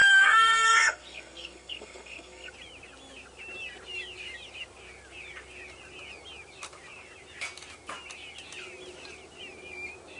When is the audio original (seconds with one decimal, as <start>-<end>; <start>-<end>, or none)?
2.5-10.2